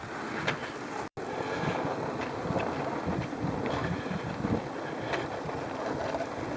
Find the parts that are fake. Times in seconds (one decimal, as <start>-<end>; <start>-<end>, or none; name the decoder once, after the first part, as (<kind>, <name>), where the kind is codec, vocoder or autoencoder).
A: none